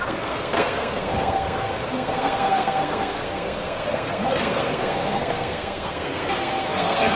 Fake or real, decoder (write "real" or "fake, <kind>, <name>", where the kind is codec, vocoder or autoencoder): fake, codec, SNAC